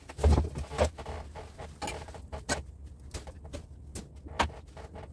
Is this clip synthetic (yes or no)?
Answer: no